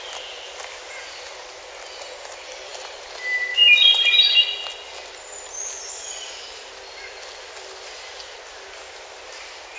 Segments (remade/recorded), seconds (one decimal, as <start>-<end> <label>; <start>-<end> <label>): 0.0-9.8 recorded